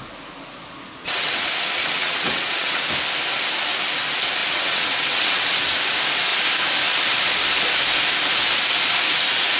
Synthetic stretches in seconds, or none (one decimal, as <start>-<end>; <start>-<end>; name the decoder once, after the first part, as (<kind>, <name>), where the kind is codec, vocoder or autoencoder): 1.0-2.8 (vocoder, WaveNeXt); 4.4-5.5